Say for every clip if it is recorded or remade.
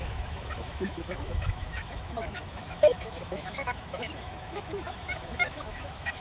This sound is remade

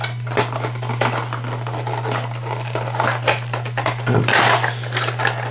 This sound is recorded